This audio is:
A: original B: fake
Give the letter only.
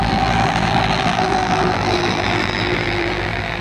B